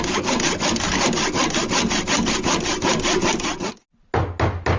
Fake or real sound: real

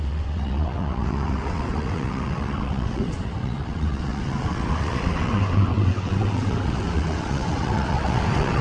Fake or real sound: fake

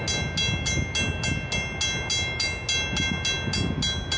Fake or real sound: real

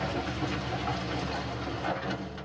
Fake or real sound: real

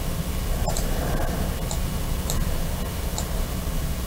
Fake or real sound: real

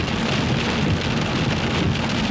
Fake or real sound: real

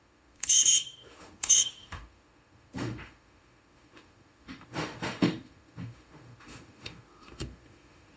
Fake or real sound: fake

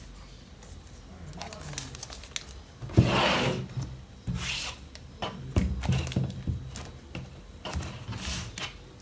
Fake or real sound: real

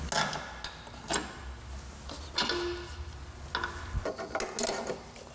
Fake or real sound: real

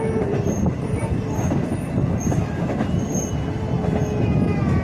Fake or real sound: real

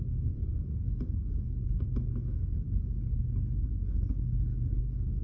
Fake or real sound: fake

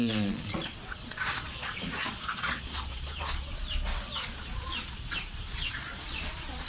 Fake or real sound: fake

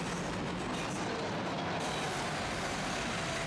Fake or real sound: real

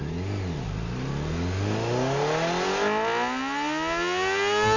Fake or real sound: real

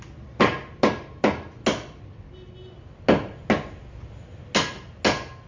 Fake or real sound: real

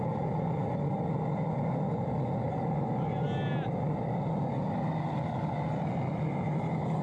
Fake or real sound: real